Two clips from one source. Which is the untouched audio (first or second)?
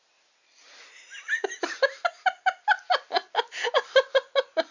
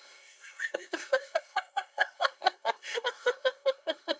first